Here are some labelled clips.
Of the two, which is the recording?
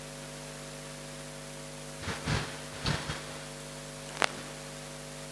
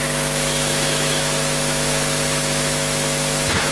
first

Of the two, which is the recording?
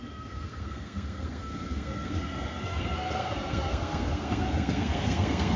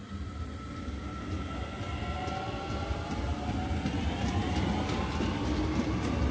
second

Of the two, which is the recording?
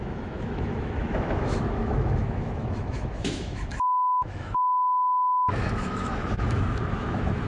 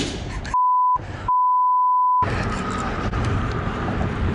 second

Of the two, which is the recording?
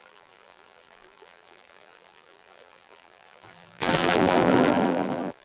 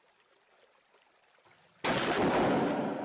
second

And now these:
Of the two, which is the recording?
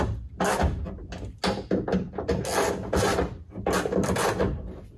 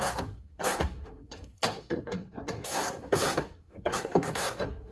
first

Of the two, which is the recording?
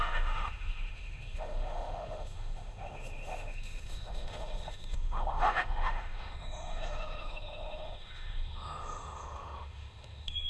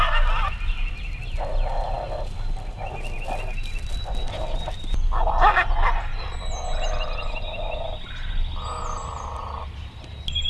second